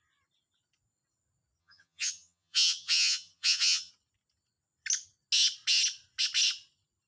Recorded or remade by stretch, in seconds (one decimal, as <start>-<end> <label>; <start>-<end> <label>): 0.0-1.6 recorded; 1.6-3.9 remade; 3.9-7.1 recorded